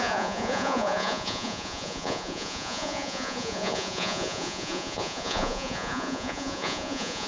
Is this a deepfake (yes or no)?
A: yes